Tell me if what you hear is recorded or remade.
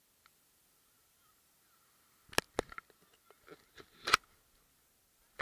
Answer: recorded